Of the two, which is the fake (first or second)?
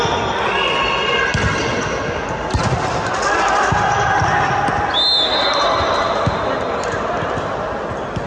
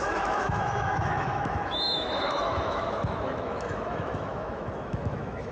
second